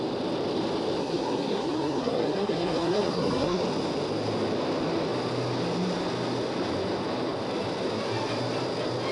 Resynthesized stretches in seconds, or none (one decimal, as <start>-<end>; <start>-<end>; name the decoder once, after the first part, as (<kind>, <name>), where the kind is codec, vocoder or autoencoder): 1.0-3.6 (codec, SNAC)